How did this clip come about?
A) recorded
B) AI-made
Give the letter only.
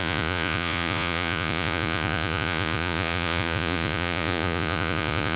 B